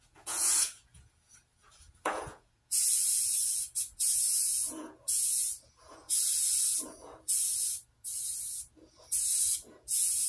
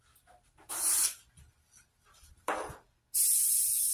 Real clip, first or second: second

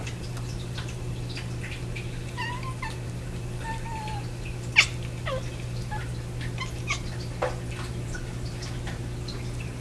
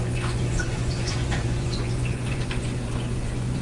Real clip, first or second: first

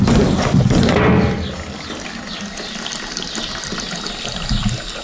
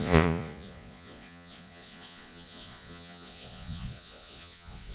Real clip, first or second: first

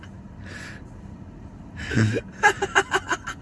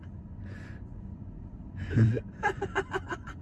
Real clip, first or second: first